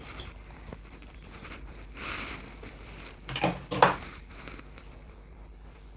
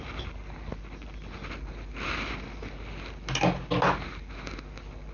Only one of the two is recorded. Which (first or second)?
second